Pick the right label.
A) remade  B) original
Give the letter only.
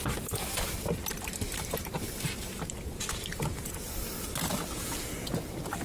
B